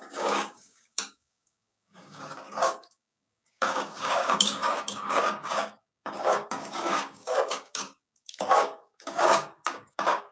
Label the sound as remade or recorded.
remade